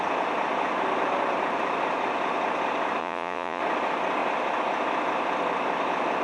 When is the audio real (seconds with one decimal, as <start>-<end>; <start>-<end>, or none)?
0.0-3.0; 3.6-6.2